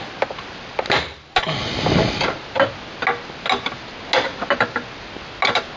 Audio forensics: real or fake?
real